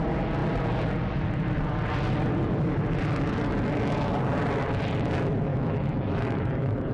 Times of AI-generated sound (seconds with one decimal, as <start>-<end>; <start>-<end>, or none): 5.5-6.9

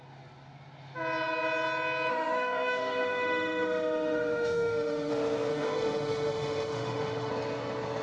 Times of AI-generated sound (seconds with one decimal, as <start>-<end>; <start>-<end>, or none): 2.1-5.1; 5.5-7.3

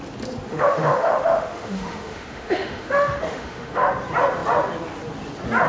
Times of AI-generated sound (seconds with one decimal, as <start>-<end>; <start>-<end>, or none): 0.5-3.9